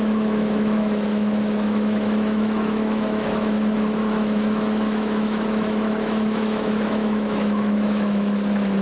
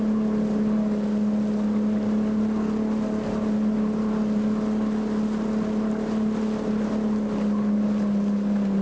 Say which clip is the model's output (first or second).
first